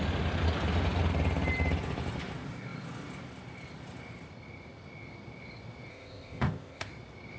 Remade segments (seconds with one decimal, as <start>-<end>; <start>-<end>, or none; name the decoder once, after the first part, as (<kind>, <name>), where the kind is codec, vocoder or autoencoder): 5.9-6.9 (codec, ZipCodec)